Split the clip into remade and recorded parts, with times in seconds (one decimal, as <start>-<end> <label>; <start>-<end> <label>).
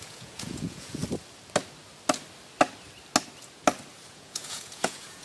0.0-1.0 remade; 1.0-4.1 recorded; 4.1-5.2 remade